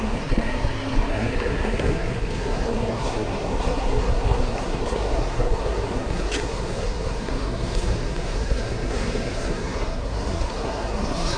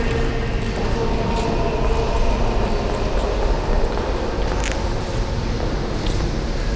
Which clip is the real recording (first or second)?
second